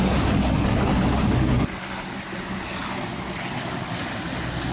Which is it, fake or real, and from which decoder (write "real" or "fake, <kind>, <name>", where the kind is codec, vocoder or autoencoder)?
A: real